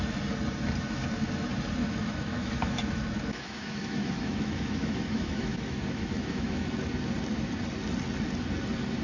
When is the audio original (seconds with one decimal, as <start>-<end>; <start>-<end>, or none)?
0.0-1.8; 6.7-9.0